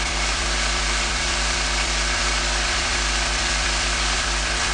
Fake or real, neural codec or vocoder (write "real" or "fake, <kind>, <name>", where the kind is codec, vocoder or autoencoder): fake, vocoder, BigVGAN v2